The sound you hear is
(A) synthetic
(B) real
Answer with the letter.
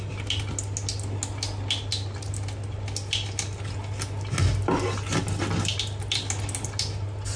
B